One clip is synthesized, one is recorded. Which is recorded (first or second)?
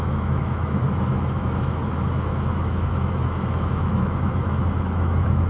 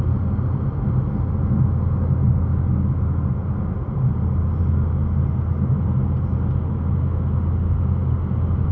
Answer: second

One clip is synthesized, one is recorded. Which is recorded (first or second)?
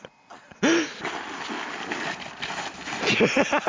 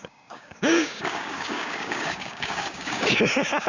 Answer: first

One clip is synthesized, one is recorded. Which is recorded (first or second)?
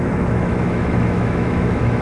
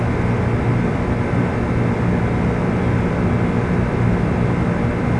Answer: second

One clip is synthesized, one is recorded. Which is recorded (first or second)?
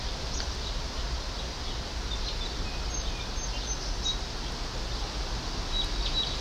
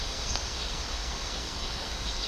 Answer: first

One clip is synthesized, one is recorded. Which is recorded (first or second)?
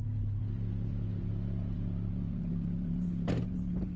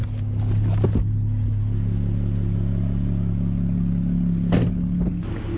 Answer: second